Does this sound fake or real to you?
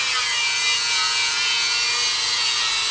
real